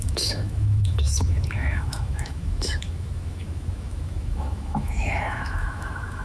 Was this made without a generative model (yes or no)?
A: no